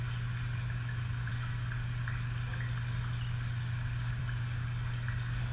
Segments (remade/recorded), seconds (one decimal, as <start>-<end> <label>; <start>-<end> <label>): 0.0-5.5 recorded